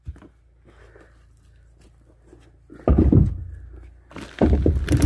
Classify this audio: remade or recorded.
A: recorded